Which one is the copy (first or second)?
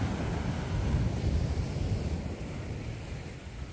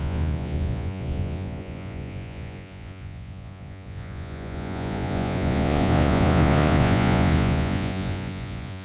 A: second